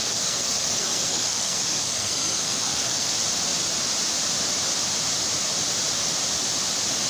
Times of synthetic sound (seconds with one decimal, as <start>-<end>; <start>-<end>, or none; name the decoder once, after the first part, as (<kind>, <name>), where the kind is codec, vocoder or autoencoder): 0.0-3.1 (codec, SNAC)